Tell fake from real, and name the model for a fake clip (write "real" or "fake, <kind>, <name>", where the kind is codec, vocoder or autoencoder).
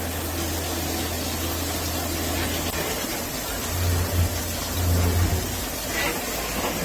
real